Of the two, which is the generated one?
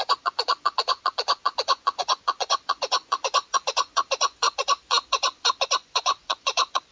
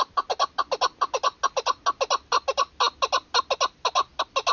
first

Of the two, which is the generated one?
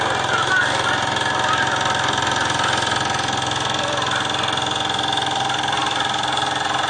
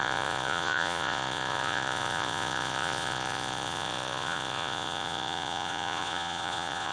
second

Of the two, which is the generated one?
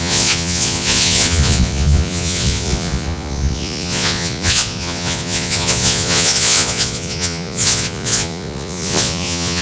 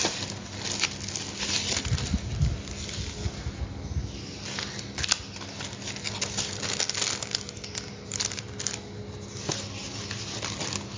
first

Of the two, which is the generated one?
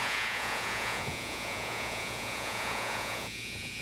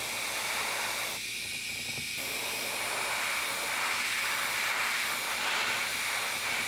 first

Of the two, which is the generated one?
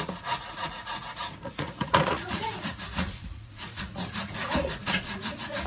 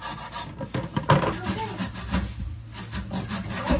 first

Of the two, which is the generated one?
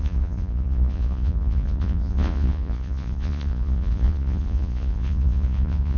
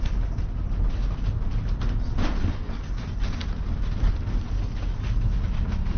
first